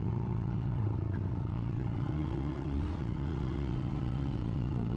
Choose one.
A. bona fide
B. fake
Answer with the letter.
B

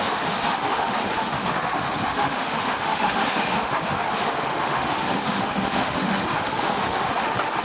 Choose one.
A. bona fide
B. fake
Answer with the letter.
B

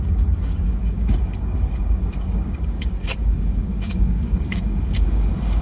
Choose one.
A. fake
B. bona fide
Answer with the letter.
A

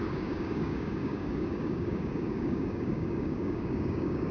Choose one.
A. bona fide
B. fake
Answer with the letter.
B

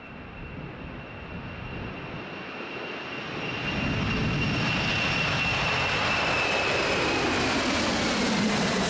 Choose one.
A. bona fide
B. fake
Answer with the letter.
A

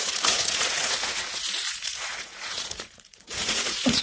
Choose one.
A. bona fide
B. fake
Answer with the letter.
B